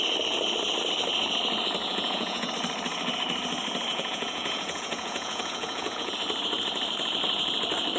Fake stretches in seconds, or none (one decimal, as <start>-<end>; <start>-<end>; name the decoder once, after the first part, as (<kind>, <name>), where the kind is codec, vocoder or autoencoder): 1.8-2.5 (vocoder, Vocos); 3.9-6.1

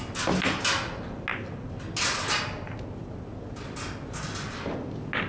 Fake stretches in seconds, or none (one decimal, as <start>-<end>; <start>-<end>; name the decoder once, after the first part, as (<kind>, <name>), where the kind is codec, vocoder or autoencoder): none

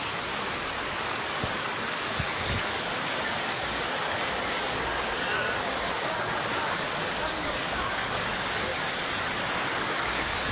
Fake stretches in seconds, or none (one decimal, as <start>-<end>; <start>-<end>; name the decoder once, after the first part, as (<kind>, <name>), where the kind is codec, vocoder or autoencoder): 0.0-8.7 (codec, DAC); 9.6-10.5